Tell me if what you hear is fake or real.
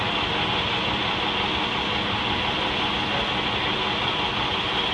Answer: real